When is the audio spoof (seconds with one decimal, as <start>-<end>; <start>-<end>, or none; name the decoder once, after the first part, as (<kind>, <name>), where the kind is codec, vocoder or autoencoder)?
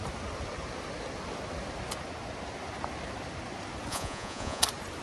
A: 3.9-4.6 (vocoder, Vocos)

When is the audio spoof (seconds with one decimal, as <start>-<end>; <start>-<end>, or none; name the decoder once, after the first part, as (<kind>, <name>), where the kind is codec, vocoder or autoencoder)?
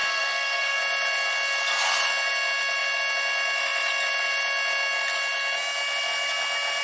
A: 0.0-0.8 (codec, SNAC)